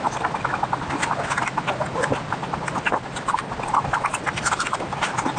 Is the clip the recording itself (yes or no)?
yes